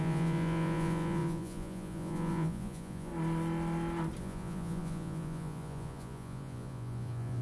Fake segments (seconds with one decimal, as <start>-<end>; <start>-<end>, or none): 0.0-3.1; 4.2-7.4